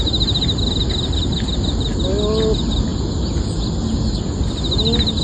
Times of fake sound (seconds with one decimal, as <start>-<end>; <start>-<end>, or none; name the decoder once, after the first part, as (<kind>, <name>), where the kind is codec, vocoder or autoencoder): none